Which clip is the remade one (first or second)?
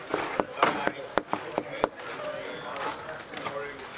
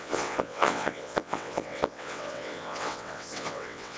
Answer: second